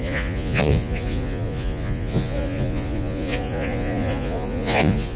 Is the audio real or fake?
fake